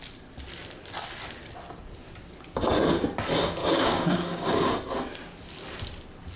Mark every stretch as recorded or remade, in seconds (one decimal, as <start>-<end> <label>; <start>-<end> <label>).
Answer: 0.0-3.6 recorded; 3.6-4.7 remade; 4.7-6.4 recorded